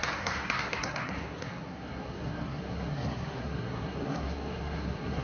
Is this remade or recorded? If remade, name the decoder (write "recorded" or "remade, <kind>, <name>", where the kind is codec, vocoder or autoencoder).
remade, codec, SNAC